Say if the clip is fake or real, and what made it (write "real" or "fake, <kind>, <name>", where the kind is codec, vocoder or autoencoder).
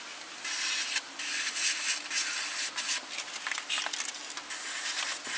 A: real